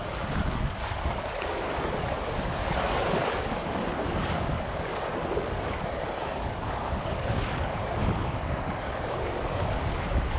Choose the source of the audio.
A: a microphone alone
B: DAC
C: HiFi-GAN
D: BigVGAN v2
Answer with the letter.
B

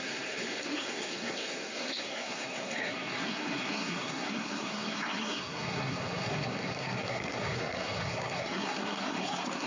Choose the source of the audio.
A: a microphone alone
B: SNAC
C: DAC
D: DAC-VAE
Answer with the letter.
B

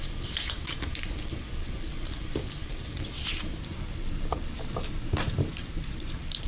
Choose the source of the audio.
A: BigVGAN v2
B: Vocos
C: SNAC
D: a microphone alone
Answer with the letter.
A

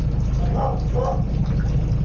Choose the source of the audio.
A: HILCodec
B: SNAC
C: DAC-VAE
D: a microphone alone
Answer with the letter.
D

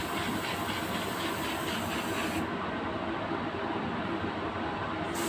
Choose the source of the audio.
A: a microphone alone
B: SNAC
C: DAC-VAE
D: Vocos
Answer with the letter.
A